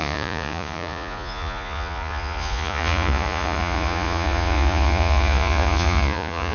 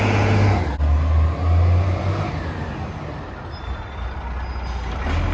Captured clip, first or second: second